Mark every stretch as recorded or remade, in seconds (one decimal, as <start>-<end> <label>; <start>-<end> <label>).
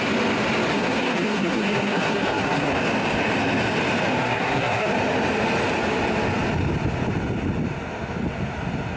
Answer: 0.0-0.7 recorded; 0.7-2.7 remade; 2.7-4.2 recorded; 4.2-4.9 remade; 4.9-9.0 recorded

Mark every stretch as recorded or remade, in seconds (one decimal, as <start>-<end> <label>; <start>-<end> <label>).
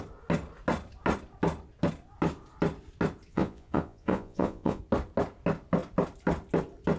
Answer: 0.0-3.3 recorded; 3.3-4.8 remade; 4.8-7.0 recorded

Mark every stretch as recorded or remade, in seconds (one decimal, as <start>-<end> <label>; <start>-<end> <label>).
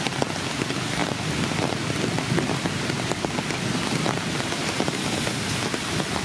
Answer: 0.0-6.2 recorded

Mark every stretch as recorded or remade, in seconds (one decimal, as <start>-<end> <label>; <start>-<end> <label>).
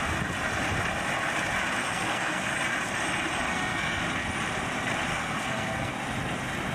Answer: 0.0-1.8 recorded; 1.8-2.5 remade; 2.5-3.5 recorded; 3.5-4.0 remade; 4.0-5.1 recorded; 5.1-5.9 remade; 5.9-6.7 recorded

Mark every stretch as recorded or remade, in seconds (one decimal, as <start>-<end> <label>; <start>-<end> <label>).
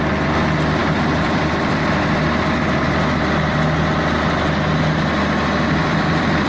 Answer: 0.0-0.8 recorded; 0.8-3.6 remade; 3.6-5.8 recorded; 5.8-6.5 remade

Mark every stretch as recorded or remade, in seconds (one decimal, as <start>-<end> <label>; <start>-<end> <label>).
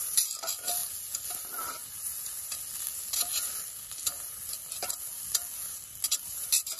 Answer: 0.0-6.8 recorded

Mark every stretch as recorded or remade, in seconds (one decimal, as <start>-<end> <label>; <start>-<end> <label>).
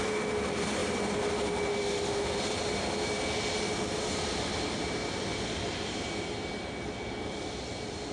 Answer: 0.0-8.1 recorded